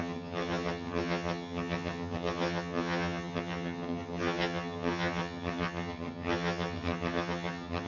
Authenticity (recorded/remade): remade